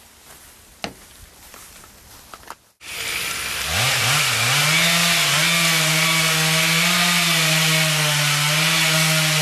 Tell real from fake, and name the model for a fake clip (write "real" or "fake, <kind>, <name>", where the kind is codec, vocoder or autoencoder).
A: real